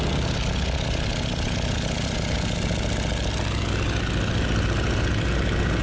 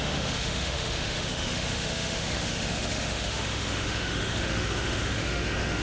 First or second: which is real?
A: first